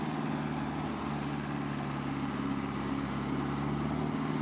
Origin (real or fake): real